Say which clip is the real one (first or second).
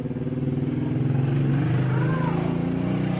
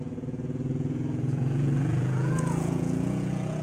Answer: first